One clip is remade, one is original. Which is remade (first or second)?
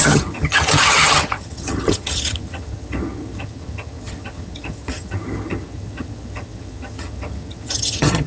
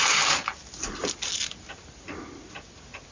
first